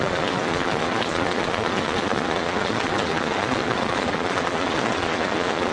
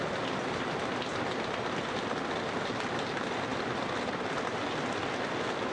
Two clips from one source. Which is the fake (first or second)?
first